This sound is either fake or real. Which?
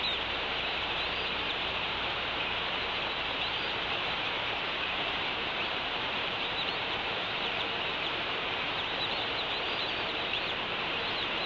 fake